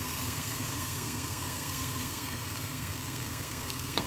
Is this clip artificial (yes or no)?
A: yes